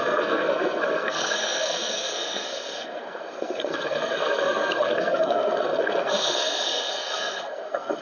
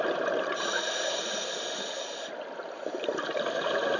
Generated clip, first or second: first